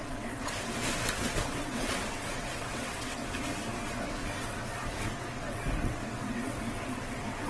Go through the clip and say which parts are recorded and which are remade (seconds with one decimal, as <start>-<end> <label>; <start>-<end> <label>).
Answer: 0.0-0.7 remade; 0.7-1.5 recorded; 1.5-3.2 remade; 3.2-4.0 recorded; 4.0-7.5 remade

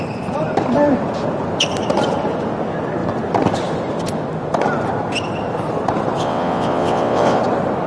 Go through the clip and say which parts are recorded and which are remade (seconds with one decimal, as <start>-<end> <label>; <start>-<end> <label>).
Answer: 0.0-6.2 recorded; 6.2-7.4 remade; 7.4-7.9 recorded

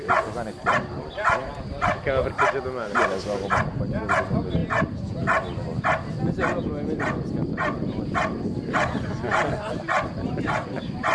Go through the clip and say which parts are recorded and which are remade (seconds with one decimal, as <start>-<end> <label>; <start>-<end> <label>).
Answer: 0.0-11.1 recorded

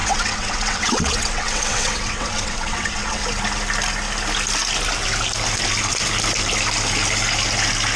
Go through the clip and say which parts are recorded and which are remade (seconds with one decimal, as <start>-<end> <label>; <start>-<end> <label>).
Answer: 0.0-3.2 remade; 3.2-8.0 recorded

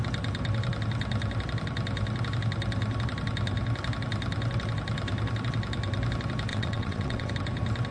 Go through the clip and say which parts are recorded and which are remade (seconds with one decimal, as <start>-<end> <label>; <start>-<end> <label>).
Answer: 0.0-6.5 recorded; 6.5-7.3 remade; 7.3-7.9 recorded

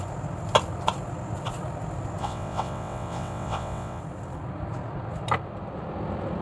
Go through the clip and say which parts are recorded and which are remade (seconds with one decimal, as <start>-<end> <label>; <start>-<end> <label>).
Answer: 0.0-2.2 recorded; 2.2-4.0 remade; 4.0-6.4 recorded

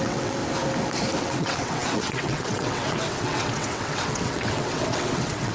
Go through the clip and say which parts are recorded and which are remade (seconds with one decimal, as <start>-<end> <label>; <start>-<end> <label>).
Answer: 0.0-0.4 remade; 0.4-1.2 recorded; 1.2-5.5 remade